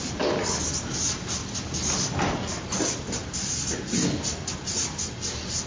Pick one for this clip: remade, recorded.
recorded